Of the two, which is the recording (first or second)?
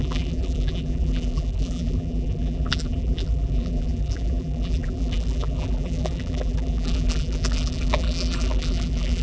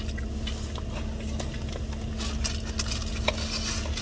second